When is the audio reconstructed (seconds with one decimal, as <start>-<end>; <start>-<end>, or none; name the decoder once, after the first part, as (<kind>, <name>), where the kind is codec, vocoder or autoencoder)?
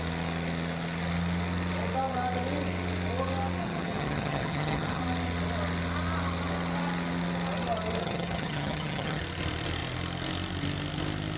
3.6-5.0 (vocoder, HiFi-GAN); 8.0-9.2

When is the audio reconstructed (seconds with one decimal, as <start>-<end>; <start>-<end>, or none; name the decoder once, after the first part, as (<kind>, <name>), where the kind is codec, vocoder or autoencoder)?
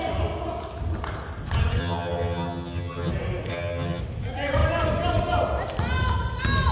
1.8-3.1 (vocoder, HiFi-GAN); 3.5-4.0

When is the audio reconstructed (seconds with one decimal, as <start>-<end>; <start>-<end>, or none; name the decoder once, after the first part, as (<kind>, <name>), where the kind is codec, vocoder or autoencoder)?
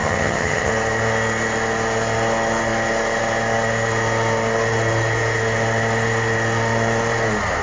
0.0-0.7 (vocoder, HiFi-GAN)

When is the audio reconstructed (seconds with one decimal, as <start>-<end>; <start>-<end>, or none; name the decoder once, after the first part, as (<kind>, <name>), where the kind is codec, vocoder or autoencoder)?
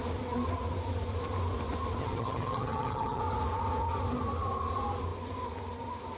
2.0-3.2 (vocoder, HiFi-GAN)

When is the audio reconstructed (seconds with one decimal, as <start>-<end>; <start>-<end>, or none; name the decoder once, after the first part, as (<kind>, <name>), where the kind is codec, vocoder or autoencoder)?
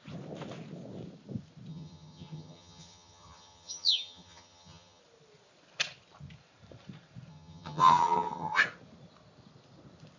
1.7-5.0 (vocoder, HiFi-GAN); 7.3-8.6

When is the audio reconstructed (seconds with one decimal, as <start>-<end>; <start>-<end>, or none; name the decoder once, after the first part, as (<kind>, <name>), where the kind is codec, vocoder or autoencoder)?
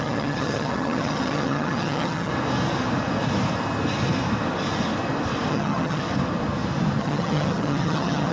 0.0-2.3 (vocoder, HiFi-GAN); 5.5-6.0; 7.0-8.3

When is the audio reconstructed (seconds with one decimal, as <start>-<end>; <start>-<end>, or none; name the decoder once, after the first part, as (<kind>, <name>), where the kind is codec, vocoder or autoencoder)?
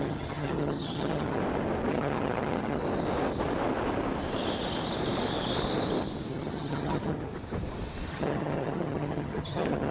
0.0-1.4 (vocoder, HiFi-GAN); 1.9-2.8; 6.3-7.3; 8.1-9.9